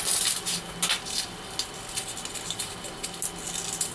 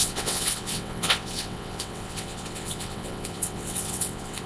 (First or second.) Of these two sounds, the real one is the first